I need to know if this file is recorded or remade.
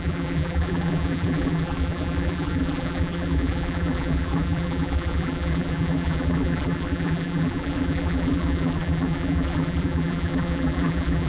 remade